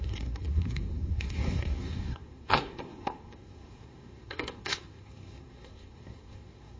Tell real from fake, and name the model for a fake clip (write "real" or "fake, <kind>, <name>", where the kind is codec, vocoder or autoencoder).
fake, codec, SNAC